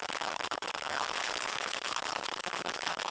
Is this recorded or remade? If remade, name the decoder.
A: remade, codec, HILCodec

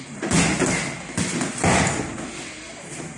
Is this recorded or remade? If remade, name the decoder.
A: recorded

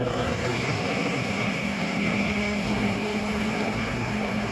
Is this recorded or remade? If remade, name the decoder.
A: remade, codec, SNAC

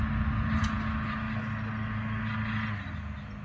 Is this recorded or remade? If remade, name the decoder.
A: recorded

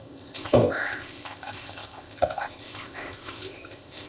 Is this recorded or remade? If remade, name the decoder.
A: remade, codec, ZipCodec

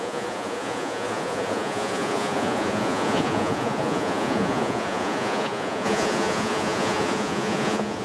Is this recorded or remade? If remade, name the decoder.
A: remade, vocoder, Vocos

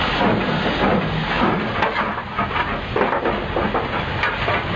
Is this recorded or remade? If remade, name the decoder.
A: recorded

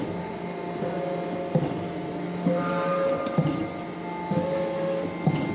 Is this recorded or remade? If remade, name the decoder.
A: recorded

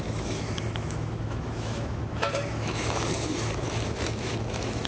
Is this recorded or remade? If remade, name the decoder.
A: remade, autoencoder, DAC-VAE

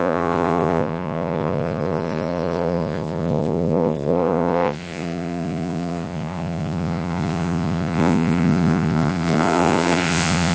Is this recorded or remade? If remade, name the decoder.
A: remade, vocoder, Vocos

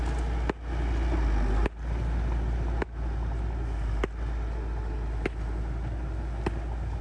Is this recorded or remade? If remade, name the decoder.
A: recorded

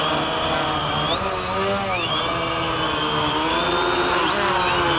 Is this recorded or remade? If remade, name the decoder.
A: recorded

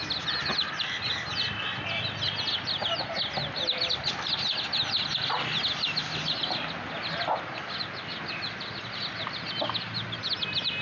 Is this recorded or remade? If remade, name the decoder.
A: recorded